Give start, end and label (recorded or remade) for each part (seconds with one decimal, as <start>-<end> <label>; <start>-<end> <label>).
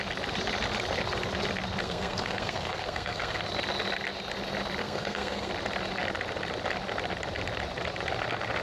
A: 0.0-1.8 recorded; 1.8-3.4 remade; 3.4-4.8 recorded; 4.8-5.5 remade; 5.5-8.6 recorded